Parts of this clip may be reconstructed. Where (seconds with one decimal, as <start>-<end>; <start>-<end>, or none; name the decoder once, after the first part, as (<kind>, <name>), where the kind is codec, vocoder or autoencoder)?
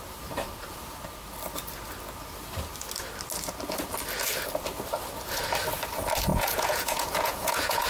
6.3-7.9 (vocoder, Vocos)